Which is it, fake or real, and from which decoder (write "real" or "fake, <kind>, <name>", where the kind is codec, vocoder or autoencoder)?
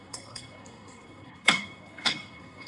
fake, codec, SNAC